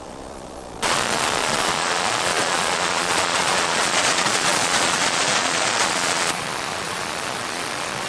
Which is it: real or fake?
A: fake